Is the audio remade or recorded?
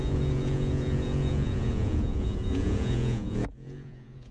remade